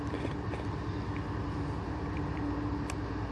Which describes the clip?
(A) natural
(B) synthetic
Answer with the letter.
A